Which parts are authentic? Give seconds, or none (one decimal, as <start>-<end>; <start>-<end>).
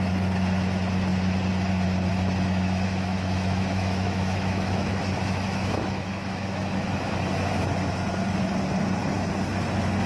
0.0-2.1; 7.1-10.1